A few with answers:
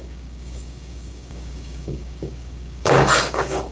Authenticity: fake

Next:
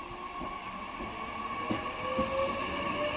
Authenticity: real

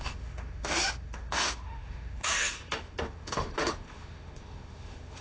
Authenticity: fake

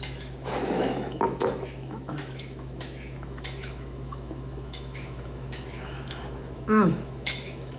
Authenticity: fake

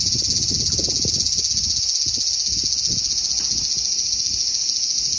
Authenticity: real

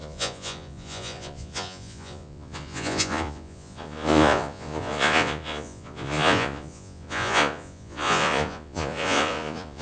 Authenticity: fake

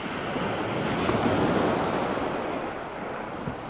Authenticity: real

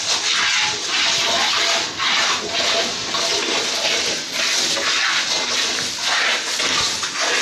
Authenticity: real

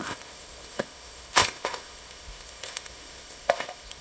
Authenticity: fake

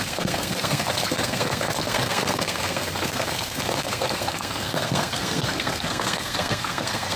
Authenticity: fake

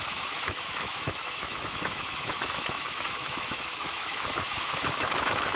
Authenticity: fake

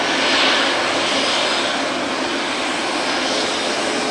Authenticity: real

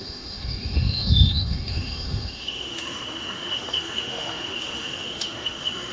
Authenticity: fake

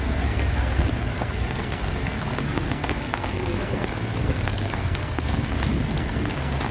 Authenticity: fake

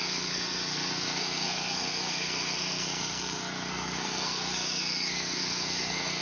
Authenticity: fake